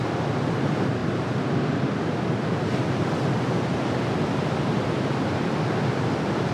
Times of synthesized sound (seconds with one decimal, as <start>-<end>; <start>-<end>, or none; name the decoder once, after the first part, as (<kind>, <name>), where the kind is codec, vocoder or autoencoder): none